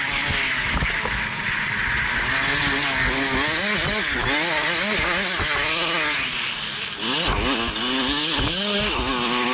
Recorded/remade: recorded